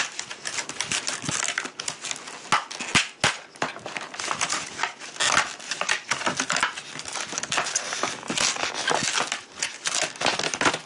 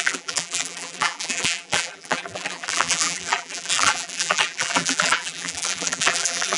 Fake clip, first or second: second